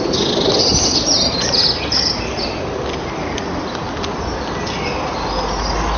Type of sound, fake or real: real